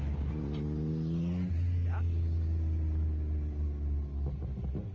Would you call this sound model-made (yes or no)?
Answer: no